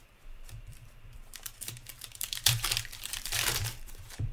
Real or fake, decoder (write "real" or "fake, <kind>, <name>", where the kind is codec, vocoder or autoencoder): fake, vocoder, BigVGAN v2